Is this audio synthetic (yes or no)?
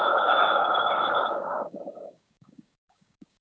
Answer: yes